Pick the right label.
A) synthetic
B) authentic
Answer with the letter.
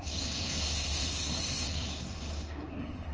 A